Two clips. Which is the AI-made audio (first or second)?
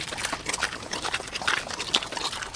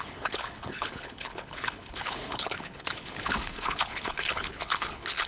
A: second